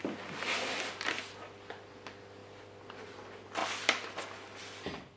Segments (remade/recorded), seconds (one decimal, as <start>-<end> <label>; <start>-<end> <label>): 0.0-5.2 recorded